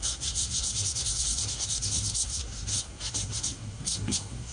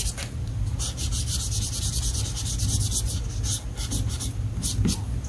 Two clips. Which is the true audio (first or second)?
second